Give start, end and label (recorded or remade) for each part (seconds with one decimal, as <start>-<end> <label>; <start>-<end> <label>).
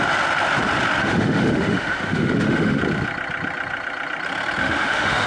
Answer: 0.0-1.0 recorded; 1.0-2.8 remade; 2.8-4.6 recorded; 4.6-5.3 remade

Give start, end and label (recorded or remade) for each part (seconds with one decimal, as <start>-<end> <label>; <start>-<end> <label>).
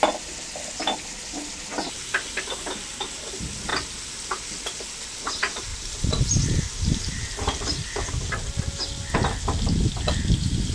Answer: 0.0-5.7 recorded; 5.7-8.1 remade; 8.1-10.7 recorded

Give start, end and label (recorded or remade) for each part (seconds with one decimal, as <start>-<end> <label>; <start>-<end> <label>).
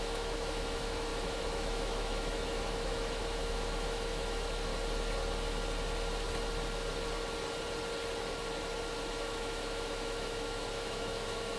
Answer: 0.0-4.7 remade; 4.7-9.1 recorded; 9.1-11.6 remade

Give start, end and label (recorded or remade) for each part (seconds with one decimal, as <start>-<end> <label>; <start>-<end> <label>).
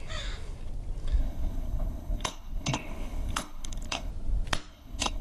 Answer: 0.0-1.2 recorded; 1.2-4.1 remade; 4.1-4.7 recorded; 4.7-5.2 remade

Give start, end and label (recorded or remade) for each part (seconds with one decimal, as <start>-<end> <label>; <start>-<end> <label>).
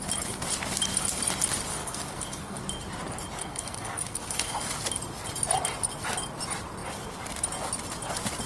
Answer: 0.0-1.8 recorded; 1.8-2.6 remade; 2.6-3.4 recorded; 3.4-4.7 remade; 4.7-8.5 recorded